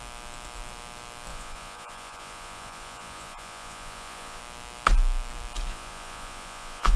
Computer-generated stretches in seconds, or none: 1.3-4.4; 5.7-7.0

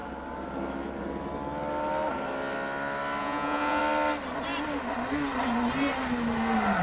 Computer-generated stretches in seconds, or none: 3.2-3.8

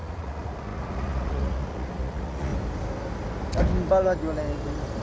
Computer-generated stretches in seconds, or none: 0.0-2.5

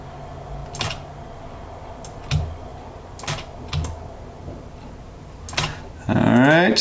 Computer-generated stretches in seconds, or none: none